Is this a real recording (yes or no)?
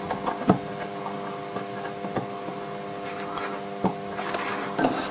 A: yes